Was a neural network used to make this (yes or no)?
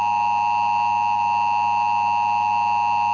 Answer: no